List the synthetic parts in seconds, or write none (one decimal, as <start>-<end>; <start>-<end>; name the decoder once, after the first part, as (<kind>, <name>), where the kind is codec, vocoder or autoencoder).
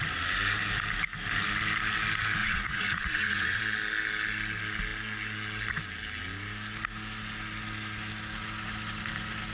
2.4-3.6 (vocoder, Vocos)